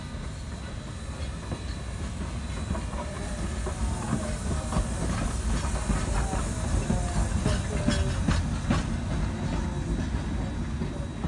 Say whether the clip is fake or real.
real